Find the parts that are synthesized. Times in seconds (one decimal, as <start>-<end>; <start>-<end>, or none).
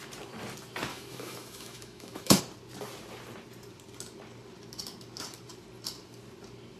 0.9-2.4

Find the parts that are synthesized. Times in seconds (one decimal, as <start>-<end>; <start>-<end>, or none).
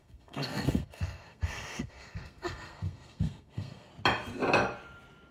0.0-3.9